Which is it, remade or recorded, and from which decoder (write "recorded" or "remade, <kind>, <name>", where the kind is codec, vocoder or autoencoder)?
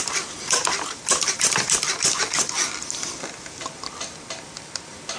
remade, vocoder, BigVGAN v2